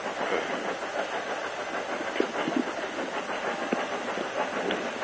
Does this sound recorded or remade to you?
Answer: recorded